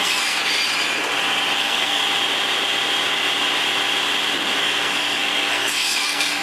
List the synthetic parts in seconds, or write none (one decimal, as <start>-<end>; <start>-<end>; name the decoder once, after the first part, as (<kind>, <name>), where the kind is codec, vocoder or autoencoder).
0.0-0.4 (codec, SNAC); 1.6-2.0; 4.6-6.4